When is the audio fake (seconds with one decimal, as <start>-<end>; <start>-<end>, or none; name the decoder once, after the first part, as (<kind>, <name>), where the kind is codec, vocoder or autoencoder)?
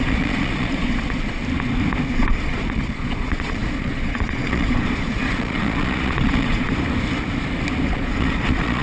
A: 0.0-1.4 (vocoder, Vocos); 2.2-6.7; 7.9-8.8